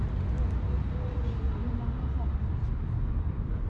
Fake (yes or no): no